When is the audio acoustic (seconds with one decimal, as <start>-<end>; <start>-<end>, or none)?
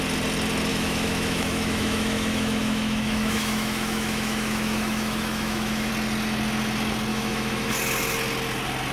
0.0-0.7; 5.9-7.1; 7.7-8.9